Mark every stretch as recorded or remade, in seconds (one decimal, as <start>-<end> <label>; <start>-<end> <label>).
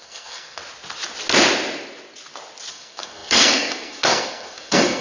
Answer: 0.0-0.6 remade; 0.6-2.7 recorded; 2.7-5.0 remade